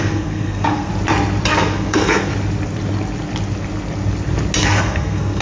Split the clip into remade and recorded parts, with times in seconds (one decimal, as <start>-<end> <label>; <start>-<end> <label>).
0.0-0.9 remade; 0.9-1.5 recorded; 1.5-2.3 remade; 2.3-4.6 recorded; 4.6-5.4 remade